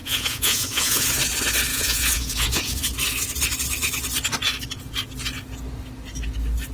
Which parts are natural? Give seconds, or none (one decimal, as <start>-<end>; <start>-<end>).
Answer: 1.1-1.7; 2.8-6.7